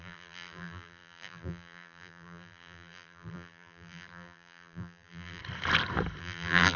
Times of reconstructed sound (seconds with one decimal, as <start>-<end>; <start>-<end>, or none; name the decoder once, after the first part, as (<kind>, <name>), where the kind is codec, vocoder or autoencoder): 0.0-5.4 (vocoder, BigVGAN v2); 6.2-6.8